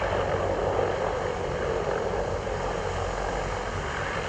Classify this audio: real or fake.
real